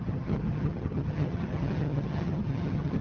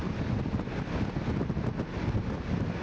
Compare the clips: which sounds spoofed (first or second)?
first